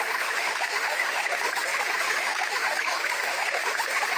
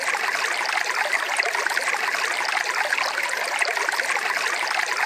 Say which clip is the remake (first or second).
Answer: first